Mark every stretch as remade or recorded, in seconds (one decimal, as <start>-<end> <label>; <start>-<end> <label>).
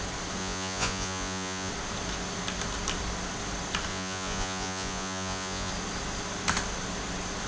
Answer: 0.0-0.4 recorded; 0.4-1.7 remade; 1.7-3.9 recorded; 3.9-5.7 remade; 5.7-7.5 recorded